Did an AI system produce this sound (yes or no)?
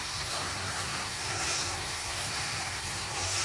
yes